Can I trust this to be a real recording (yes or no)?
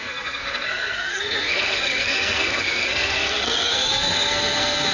no